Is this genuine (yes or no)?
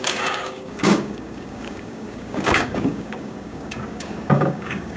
no